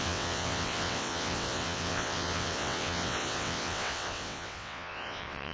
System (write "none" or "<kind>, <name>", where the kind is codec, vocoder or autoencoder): vocoder, WaveNeXt